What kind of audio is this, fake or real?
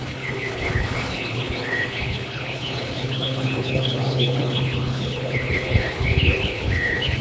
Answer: fake